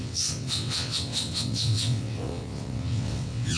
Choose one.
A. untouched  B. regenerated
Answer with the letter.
B